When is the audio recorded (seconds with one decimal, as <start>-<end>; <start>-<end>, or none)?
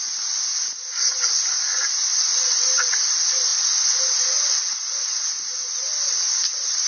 0.5-1.1; 3.5-4.5